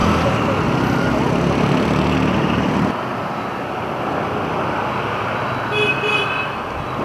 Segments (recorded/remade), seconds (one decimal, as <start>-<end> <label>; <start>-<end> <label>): 0.0-7.0 recorded